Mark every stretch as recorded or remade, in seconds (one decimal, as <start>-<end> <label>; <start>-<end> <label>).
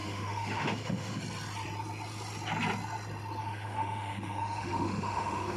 0.0-1.2 remade; 1.2-3.4 recorded; 3.4-5.6 remade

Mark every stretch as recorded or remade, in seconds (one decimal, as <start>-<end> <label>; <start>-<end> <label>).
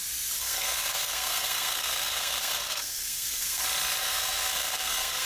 0.0-0.4 recorded; 0.4-3.6 remade; 3.6-4.0 recorded; 4.0-5.3 remade